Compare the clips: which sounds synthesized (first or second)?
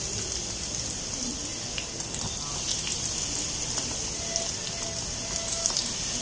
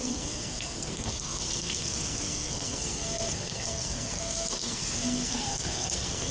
second